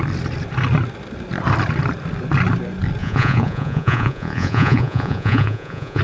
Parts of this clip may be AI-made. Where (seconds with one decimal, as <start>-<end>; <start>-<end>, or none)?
3.0-6.0